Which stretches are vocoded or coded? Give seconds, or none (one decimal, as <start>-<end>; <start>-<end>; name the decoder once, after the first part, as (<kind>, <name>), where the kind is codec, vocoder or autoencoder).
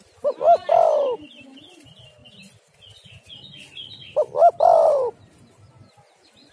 none